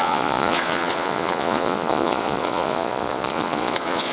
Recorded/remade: remade